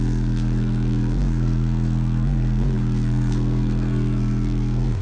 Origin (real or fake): fake